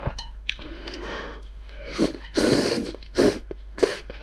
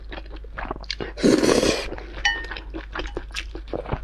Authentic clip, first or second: second